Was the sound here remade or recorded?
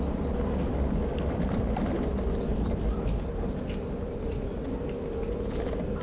recorded